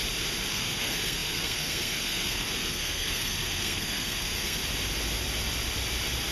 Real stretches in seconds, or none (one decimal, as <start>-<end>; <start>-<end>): 0.0-0.5; 4.6-6.3